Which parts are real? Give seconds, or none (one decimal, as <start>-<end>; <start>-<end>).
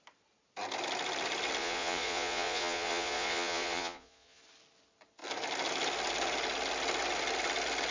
0.0-1.6; 4.4-7.9